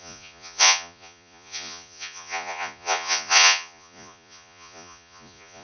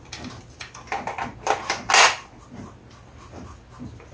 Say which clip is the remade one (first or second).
first